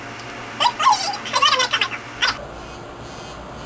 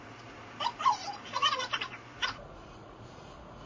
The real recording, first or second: first